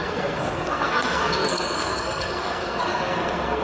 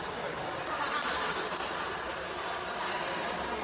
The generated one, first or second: first